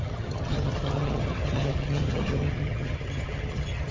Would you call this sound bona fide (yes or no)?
no